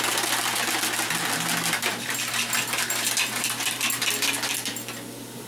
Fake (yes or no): no